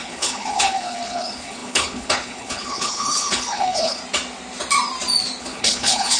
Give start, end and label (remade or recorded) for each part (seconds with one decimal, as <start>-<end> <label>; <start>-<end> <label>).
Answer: 0.0-4.0 remade; 4.0-5.4 recorded; 5.4-6.2 remade